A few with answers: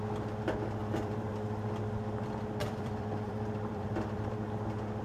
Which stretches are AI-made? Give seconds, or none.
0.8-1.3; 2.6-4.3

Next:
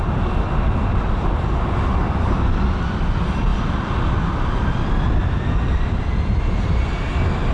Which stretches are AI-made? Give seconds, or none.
none

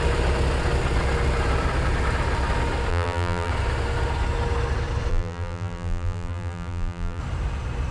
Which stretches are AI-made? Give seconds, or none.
2.9-3.5; 5.1-7.2

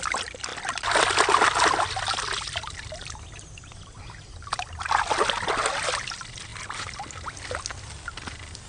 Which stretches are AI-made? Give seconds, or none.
0.5-5.6; 6.5-7.1